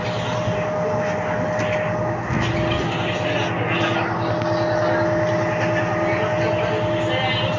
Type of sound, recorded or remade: recorded